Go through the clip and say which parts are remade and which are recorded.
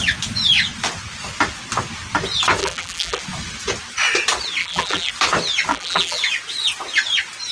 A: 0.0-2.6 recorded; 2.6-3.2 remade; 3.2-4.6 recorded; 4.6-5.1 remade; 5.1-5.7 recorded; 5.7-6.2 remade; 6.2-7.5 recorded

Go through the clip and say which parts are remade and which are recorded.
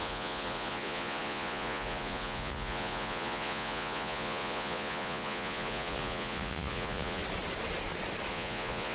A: 0.0-7.2 remade; 7.2-8.3 recorded; 8.3-8.9 remade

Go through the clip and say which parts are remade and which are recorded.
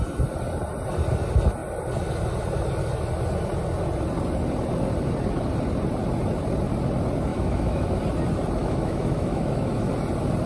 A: 0.0-7.3 recorded; 7.3-8.0 remade; 8.0-8.6 recorded; 8.6-9.9 remade; 9.9-10.5 recorded